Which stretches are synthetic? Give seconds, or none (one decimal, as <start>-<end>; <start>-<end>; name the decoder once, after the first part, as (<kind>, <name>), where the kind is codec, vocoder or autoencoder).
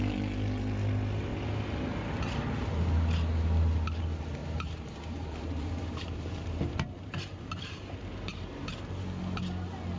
4.4-8.7 (vocoder, BigVGAN v2)